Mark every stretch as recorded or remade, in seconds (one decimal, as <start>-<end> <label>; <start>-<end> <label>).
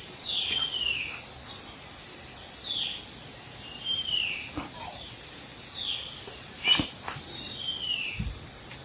0.0-1.4 remade; 1.4-4.1 recorded; 4.1-8.8 remade